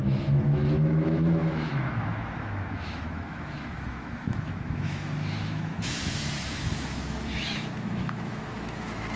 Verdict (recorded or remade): remade